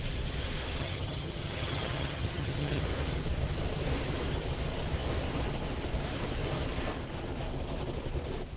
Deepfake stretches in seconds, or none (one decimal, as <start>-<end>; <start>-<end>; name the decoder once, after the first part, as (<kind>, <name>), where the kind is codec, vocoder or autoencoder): 0.8-2.8 (vocoder, HiFi-GAN)